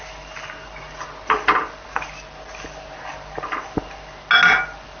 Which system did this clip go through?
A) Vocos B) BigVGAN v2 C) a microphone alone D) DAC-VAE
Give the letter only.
C